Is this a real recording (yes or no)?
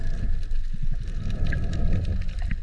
yes